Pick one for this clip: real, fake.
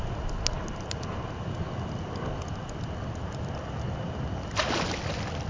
real